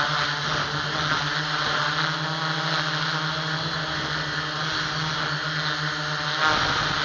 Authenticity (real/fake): real